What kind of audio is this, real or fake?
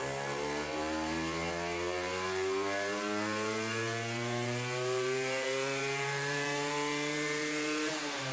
fake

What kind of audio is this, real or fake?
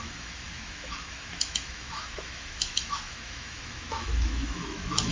fake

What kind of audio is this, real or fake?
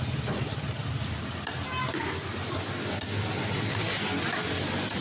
real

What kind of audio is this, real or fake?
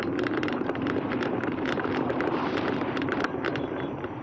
fake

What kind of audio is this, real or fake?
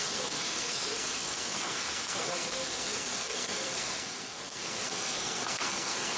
fake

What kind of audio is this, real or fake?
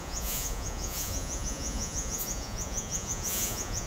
fake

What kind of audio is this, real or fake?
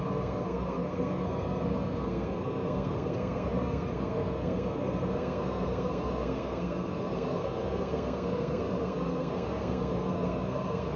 fake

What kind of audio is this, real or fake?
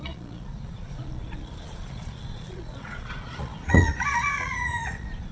fake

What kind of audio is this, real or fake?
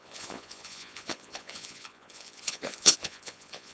fake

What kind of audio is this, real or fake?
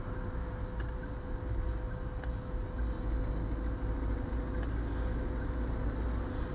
real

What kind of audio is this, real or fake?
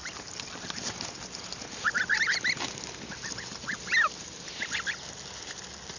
real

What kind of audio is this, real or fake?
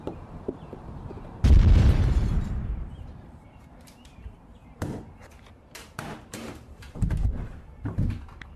fake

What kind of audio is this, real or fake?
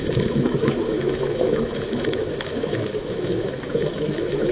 fake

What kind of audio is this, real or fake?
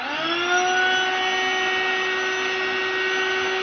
real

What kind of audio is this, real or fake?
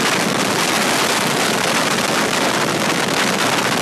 real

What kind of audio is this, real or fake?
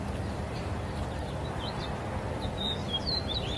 fake